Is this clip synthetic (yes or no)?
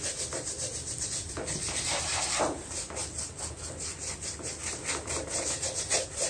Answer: no